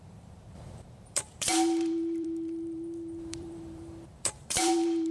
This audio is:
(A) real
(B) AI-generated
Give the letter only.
B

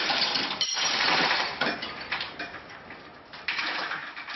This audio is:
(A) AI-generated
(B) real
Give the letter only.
A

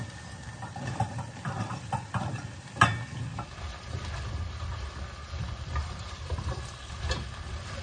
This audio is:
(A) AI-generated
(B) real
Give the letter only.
A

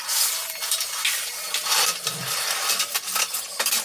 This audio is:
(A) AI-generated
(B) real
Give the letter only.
B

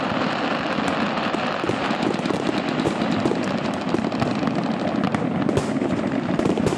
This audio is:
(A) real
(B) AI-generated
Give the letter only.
A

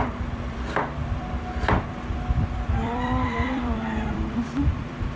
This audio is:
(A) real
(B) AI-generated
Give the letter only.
B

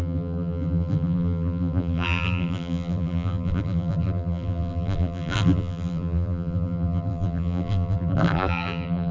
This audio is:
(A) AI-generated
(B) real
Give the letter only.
A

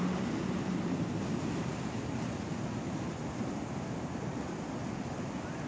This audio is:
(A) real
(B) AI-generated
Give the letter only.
A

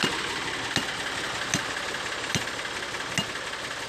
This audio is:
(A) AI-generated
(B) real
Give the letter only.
B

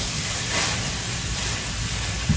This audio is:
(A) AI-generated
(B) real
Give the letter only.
A